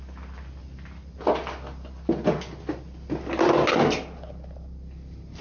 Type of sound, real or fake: real